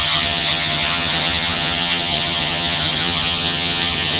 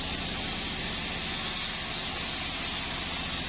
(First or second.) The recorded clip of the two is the second